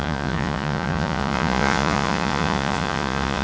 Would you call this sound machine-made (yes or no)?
yes